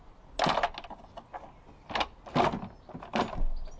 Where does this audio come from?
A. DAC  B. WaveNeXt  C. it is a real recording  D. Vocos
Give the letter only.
C